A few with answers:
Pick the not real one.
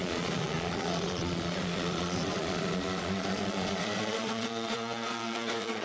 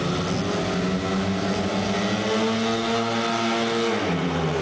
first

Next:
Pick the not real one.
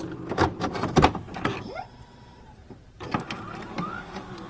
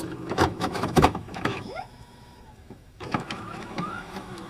second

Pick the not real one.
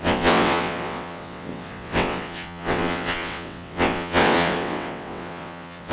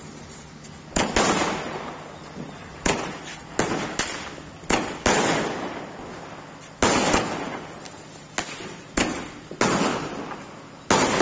first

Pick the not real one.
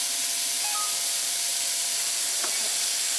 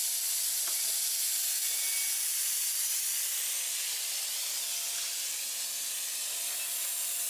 first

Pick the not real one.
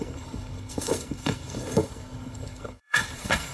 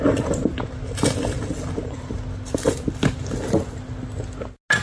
first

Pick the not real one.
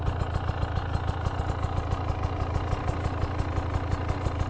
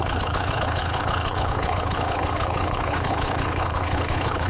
second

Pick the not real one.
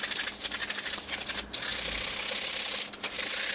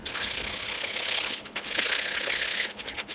second